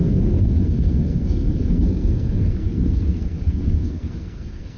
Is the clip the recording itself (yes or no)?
no